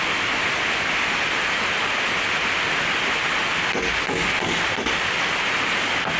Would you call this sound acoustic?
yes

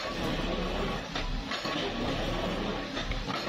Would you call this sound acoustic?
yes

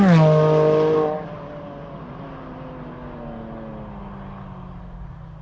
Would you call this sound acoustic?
yes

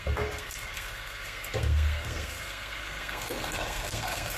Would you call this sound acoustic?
no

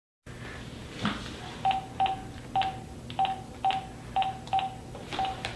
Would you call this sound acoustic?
yes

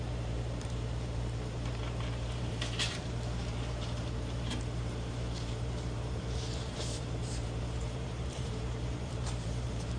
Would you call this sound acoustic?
no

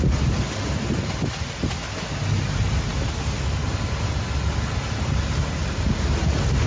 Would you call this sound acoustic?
yes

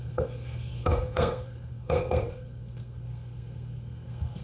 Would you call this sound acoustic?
no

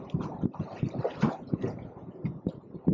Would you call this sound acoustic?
yes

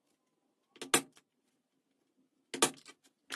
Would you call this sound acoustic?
yes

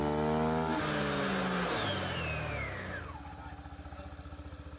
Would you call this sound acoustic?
yes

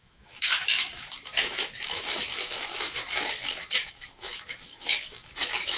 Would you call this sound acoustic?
no